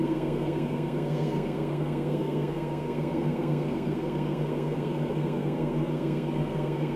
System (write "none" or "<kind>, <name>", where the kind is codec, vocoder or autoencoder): codec, SNAC